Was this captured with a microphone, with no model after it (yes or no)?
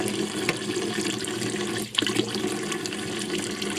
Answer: yes